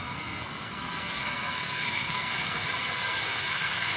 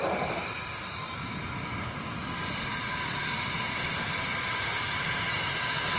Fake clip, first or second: first